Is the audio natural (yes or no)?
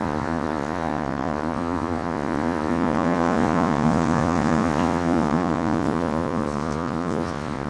no